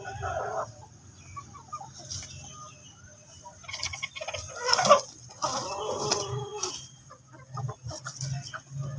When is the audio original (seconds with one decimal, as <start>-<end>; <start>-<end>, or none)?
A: 0.0-5.2; 5.8-6.5; 7.9-9.0